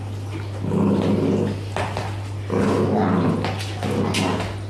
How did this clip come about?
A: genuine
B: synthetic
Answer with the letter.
A